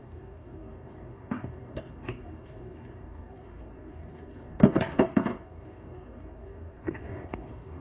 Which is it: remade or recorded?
remade